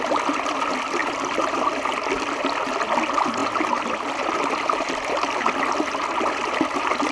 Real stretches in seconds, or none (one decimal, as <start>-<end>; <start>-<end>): 0.0-1.0; 2.4-3.4; 5.3-7.1